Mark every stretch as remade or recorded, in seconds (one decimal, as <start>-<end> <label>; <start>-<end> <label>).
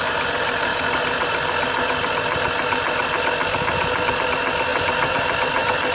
0.0-4.7 recorded; 4.7-5.9 remade